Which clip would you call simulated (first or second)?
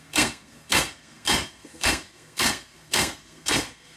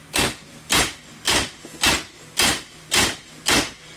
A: first